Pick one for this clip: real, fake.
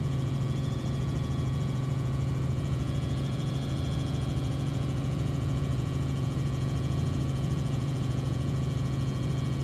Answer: fake